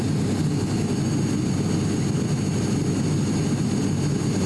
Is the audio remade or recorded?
recorded